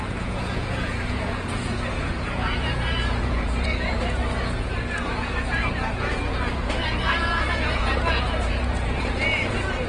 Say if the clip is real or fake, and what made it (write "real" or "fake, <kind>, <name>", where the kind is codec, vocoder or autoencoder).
fake, vocoder, Vocos